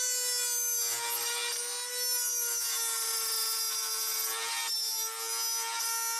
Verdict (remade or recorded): recorded